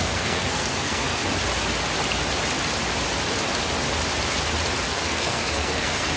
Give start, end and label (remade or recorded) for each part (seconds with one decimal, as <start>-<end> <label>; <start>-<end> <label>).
0.0-1.2 remade; 1.2-4.9 recorded; 4.9-6.2 remade